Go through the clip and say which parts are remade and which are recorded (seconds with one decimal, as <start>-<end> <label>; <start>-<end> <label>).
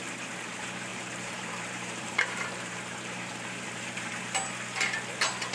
0.0-0.9 recorded; 0.9-4.2 remade; 4.2-5.5 recorded